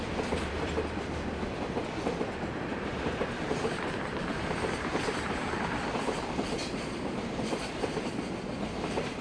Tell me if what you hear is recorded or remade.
remade